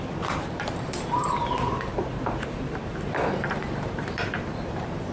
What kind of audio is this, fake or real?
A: fake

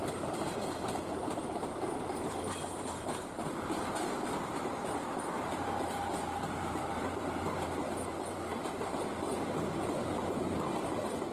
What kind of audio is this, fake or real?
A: fake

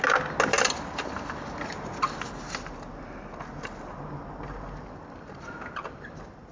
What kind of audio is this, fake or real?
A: real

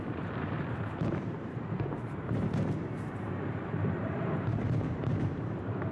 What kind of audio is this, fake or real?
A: fake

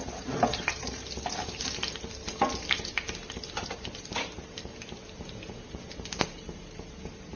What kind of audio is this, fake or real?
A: fake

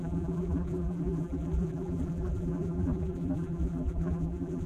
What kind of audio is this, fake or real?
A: fake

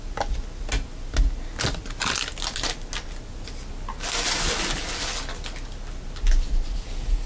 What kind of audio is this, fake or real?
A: real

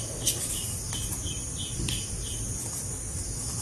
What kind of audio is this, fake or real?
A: fake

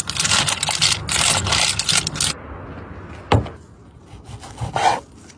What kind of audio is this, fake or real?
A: real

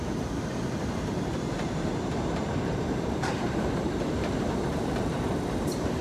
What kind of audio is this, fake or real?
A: fake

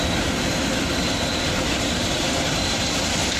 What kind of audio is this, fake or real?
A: fake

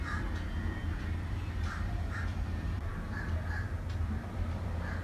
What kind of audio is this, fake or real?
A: fake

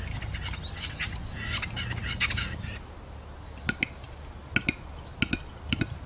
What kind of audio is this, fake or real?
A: real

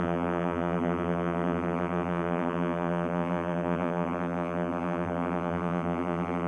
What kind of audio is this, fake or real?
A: fake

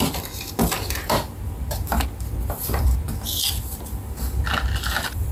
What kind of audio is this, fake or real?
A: fake